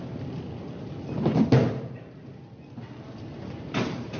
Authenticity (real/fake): real